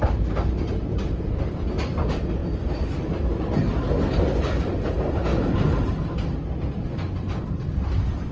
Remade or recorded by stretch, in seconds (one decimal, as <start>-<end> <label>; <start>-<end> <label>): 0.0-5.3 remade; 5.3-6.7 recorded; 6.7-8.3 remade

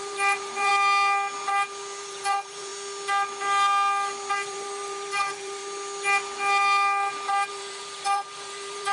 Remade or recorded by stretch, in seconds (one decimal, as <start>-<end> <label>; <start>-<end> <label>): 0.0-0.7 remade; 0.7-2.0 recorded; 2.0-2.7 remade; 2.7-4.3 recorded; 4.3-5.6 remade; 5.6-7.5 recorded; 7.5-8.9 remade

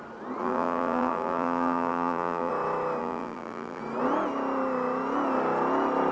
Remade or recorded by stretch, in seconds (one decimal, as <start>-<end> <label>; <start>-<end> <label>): 0.0-0.4 recorded; 0.4-2.5 remade; 2.5-3.0 recorded; 3.0-3.8 remade; 3.8-6.1 recorded

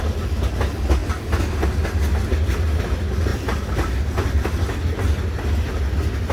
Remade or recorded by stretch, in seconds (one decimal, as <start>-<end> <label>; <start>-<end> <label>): 0.0-3.3 recorded; 3.3-4.4 remade; 4.4-6.3 recorded

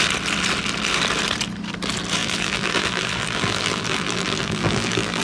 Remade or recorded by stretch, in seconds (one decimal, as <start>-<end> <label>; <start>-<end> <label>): 0.0-2.2 recorded; 2.2-5.2 remade

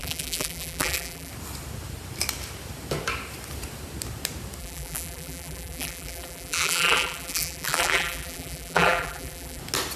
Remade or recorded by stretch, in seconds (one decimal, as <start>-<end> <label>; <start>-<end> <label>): 0.0-1.3 remade; 1.3-4.6 recorded; 4.6-9.6 remade; 9.6-10.0 recorded

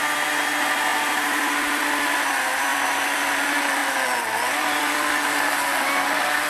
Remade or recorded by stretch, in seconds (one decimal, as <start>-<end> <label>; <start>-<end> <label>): 0.0-0.9 recorded; 0.9-1.8 remade; 1.8-6.5 recorded

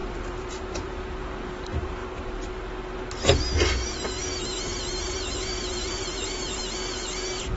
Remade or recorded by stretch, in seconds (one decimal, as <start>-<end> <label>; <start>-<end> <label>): 0.0-2.0 remade; 2.0-4.4 recorded; 4.4-6.6 remade; 6.6-7.6 recorded